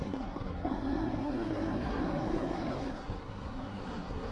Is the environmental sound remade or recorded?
remade